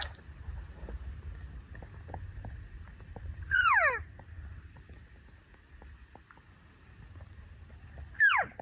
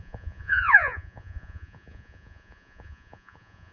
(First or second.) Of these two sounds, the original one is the first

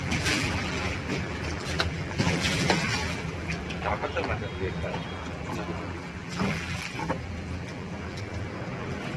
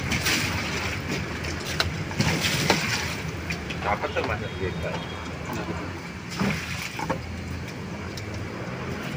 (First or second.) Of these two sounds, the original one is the second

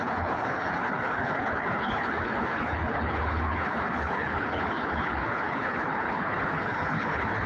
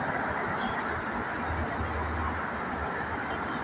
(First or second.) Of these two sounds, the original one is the second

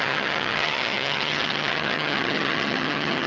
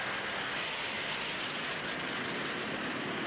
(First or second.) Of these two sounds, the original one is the second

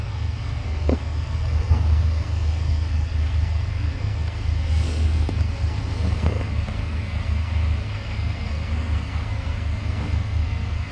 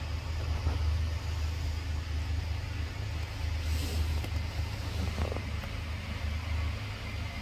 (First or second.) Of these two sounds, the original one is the second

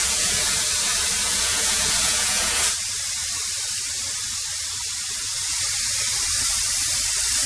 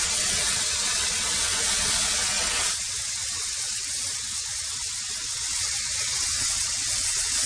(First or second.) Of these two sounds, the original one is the first